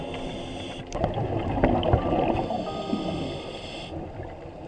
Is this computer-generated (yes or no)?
no